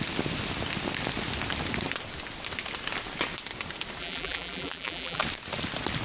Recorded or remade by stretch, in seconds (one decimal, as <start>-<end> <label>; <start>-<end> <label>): 0.0-4.0 recorded; 4.0-5.2 remade; 5.2-6.0 recorded